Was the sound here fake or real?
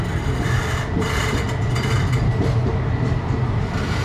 real